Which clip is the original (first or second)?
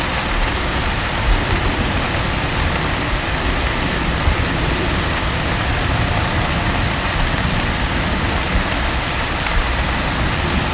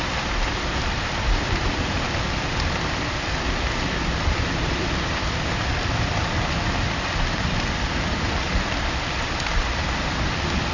first